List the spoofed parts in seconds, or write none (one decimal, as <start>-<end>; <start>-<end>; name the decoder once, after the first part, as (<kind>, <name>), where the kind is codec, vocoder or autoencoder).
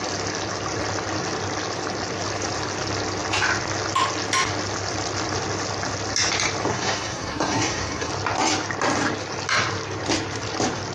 6.7-8.1 (codec, SNAC)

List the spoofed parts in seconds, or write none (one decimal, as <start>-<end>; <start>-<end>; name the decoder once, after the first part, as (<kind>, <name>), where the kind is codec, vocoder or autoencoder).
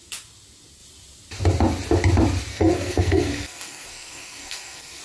2.5-5.0 (codec, SNAC)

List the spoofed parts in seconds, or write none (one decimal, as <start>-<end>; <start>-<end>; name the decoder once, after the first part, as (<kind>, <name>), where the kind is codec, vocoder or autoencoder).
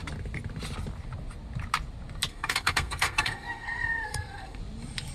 2.3-4.6 (codec, SNAC)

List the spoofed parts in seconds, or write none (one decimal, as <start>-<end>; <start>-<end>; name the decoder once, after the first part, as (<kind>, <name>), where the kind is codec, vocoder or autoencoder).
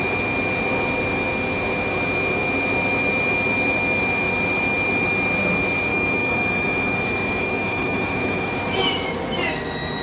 5.9-9.1 (autoencoder, DAC-VAE)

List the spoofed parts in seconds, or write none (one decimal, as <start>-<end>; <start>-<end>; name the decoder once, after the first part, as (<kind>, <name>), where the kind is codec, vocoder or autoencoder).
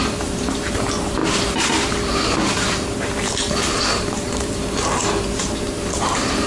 0.0-6.5 (vocoder, BigVGAN v2)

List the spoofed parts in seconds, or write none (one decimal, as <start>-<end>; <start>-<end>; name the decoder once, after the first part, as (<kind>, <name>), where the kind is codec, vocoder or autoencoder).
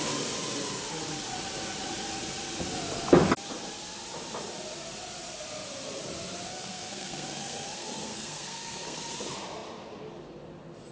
6.5-9.0 (codec, SNAC)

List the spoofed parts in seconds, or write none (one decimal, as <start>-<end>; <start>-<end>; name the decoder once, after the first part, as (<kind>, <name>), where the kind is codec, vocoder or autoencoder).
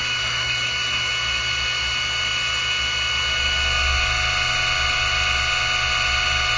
0.0-1.1 (autoencoder, DAC-VAE)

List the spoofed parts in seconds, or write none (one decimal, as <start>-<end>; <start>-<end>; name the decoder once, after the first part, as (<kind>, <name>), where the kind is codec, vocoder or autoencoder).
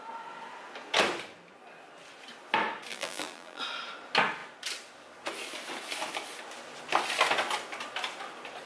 2.9-3.6 (vocoder, BigVGAN v2)